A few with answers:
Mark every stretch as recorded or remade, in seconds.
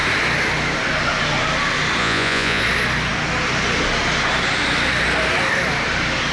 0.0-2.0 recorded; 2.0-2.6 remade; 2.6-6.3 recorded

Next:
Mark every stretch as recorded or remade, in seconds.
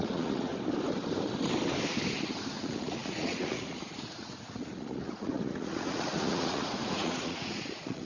0.0-0.5 remade; 0.5-2.5 recorded; 2.5-8.0 remade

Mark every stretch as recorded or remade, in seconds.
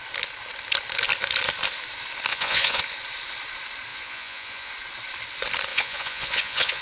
0.0-2.3 recorded; 2.3-2.8 remade; 2.8-3.9 recorded; 3.9-4.7 remade; 4.7-5.7 recorded; 5.7-6.8 remade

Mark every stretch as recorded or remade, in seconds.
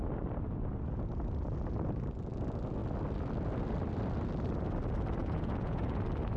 0.0-5.2 recorded; 5.2-5.8 remade; 5.8-6.4 recorded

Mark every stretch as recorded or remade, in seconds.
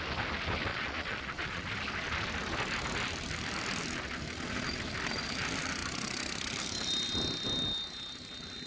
0.0-0.7 recorded; 0.7-1.6 remade; 1.6-8.7 recorded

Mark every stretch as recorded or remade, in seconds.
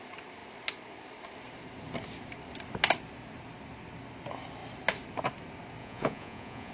0.0-5.8 recorded; 5.8-6.7 remade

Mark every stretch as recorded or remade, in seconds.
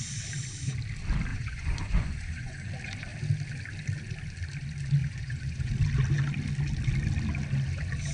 0.0-1.3 recorded; 1.3-2.7 remade; 2.7-5.0 recorded; 5.0-5.7 remade; 5.7-8.1 recorded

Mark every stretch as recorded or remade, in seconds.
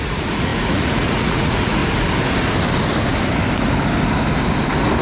0.0-1.8 remade; 1.8-5.0 recorded